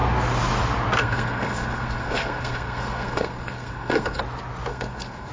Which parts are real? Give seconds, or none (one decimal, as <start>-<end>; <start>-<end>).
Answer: 0.0-1.0; 4.2-4.7